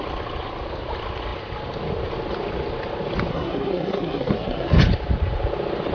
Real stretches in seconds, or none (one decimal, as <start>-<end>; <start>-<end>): 0.0-3.3; 4.8-5.9